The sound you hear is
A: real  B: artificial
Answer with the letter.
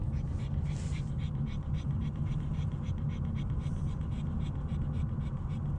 A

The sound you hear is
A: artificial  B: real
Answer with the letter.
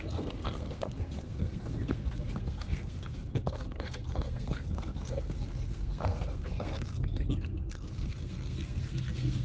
A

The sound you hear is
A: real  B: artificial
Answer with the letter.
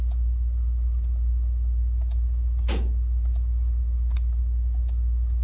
A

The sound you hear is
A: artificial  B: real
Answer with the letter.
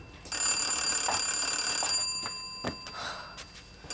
B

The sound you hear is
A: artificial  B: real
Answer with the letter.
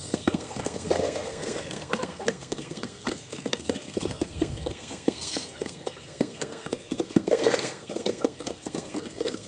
A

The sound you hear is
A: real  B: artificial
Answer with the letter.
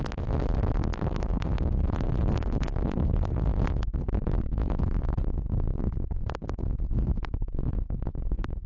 B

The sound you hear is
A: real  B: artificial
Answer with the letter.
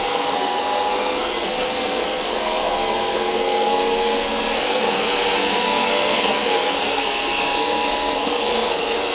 B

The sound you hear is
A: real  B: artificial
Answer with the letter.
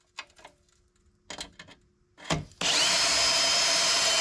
A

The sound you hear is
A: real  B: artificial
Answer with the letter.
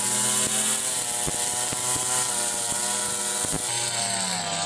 A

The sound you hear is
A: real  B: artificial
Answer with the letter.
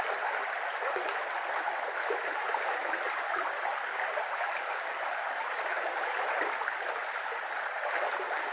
A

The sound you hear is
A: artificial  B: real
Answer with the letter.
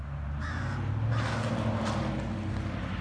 B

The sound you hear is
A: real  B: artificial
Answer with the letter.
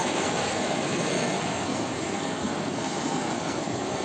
B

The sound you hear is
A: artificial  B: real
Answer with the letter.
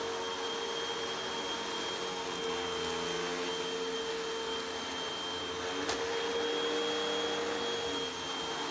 B